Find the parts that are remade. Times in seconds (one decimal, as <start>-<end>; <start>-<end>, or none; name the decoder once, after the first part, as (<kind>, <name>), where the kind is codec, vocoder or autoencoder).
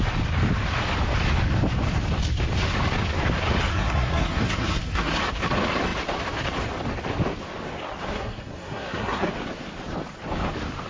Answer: 3.7-5.2 (codec, SNAC); 8.1-9.3